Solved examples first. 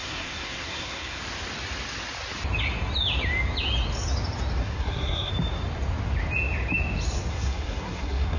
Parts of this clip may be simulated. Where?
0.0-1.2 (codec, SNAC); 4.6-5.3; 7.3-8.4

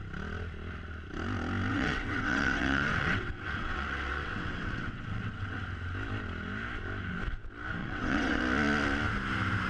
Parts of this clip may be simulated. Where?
1.7-5.6 (vocoder, WaveNeXt); 7.8-8.4